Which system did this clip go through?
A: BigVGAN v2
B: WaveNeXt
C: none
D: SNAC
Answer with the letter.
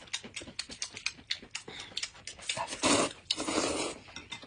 C